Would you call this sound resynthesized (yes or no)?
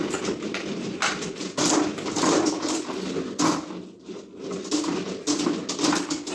no